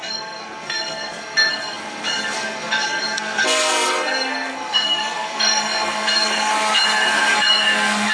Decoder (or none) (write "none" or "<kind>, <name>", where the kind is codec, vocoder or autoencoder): codec, SNAC